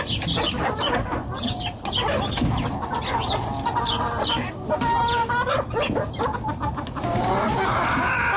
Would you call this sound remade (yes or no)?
no